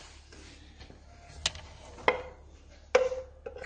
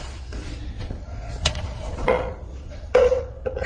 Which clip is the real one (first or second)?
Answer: first